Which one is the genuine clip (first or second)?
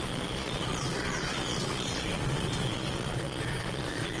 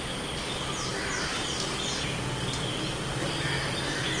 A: second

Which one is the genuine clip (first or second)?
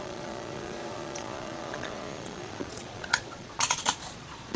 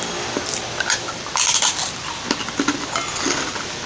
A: second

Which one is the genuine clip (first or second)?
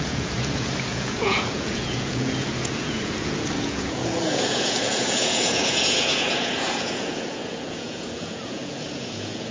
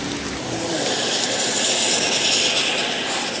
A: second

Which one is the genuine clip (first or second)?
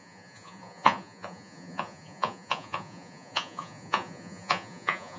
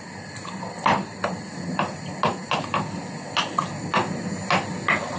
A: second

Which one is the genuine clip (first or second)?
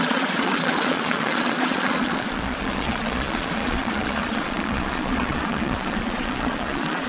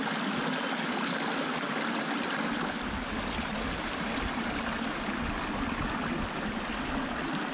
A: second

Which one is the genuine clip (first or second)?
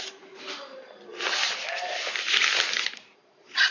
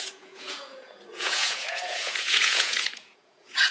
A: first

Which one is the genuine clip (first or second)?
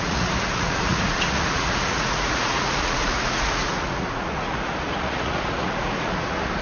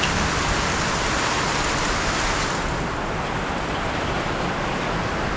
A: second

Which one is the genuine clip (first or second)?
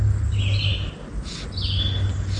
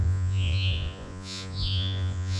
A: first